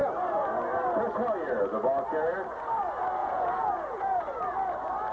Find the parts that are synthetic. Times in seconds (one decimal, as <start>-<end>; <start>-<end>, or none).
3.2-4.2